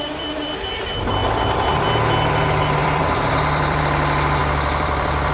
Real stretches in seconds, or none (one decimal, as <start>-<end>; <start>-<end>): 0.0-1.2; 1.8-2.8; 3.8-4.4